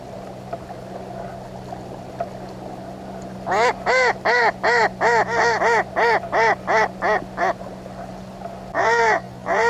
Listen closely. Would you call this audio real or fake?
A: real